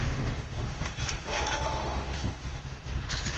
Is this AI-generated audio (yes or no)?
yes